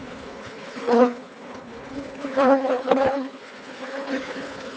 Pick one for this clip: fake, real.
fake